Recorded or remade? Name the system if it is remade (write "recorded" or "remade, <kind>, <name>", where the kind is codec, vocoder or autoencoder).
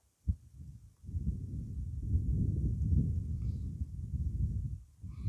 recorded